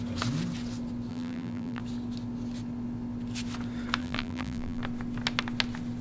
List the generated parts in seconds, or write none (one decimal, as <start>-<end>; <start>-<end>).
1.1-1.8; 4.0-4.8